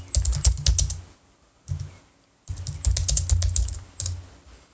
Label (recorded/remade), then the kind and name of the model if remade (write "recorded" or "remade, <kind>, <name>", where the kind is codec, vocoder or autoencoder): recorded